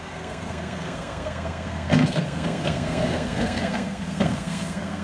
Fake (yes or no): yes